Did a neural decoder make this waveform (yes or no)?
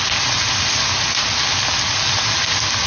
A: no